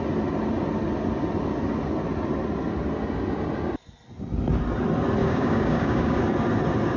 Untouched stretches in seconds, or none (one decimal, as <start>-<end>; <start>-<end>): 0.0-5.2; 6.2-7.0